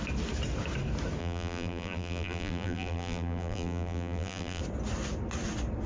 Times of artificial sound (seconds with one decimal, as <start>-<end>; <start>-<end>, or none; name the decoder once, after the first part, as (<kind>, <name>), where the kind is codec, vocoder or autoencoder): 1.2-4.6 (vocoder, BigVGAN v2)